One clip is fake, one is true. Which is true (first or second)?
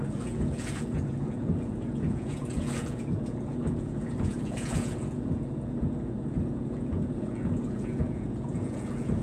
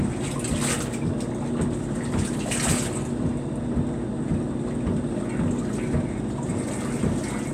second